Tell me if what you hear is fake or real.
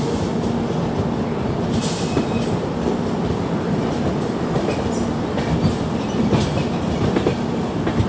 real